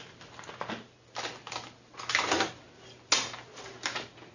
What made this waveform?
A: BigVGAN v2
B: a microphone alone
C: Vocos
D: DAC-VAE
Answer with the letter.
B